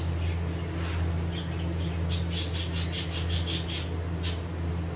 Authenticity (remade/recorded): recorded